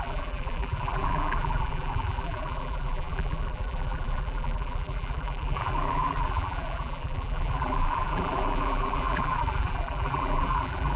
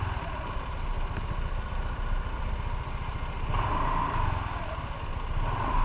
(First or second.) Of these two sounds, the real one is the second